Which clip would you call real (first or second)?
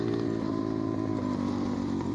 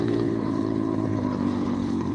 first